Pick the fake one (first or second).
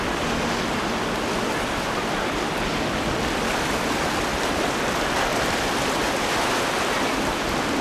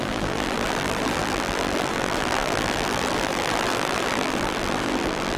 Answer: second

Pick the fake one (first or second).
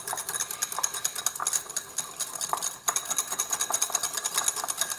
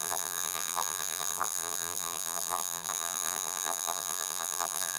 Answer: second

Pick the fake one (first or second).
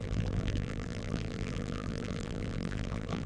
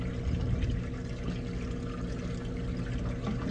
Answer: first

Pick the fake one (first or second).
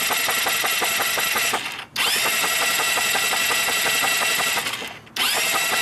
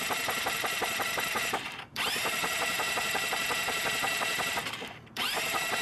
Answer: second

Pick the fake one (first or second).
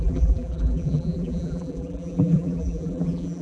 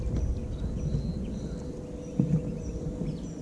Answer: first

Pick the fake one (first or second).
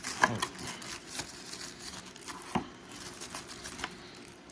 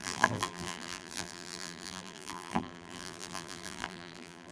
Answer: second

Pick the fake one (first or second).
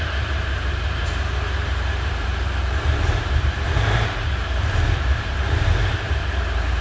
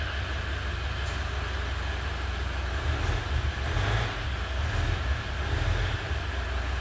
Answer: first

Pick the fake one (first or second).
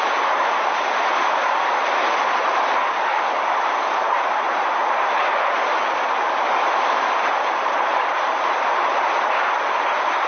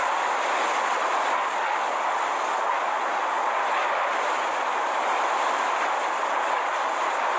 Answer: first